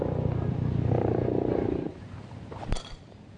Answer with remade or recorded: remade